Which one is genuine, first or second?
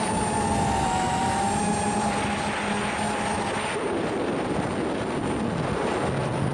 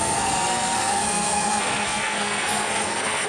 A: first